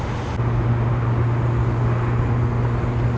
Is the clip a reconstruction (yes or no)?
no